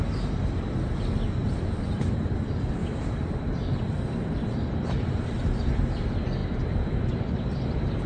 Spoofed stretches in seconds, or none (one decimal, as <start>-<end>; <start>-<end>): 1.4-5.4; 6.4-7.4